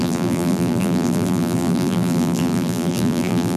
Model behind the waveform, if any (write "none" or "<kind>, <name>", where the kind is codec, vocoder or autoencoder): vocoder, BigVGAN v2